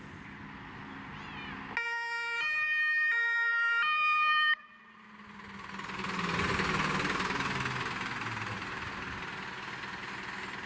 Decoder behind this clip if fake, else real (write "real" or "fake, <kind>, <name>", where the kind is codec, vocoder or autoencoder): real